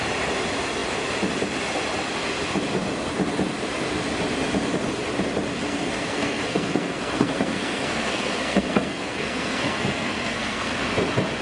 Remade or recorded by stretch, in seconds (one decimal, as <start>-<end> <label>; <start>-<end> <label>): 0.0-5.7 recorded; 5.7-10.8 remade; 10.8-11.4 recorded